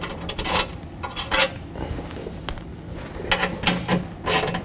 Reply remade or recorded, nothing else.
recorded